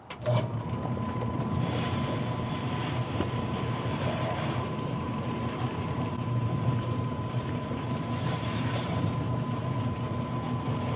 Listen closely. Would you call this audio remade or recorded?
remade